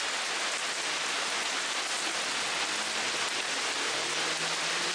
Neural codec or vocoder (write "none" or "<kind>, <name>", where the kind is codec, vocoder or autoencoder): none